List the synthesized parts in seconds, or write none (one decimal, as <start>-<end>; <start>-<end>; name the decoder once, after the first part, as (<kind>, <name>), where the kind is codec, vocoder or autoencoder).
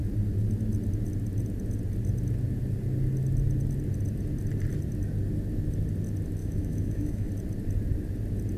6.4-7.3 (autoencoder, DAC-VAE)